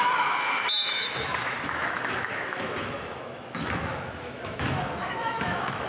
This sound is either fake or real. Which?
fake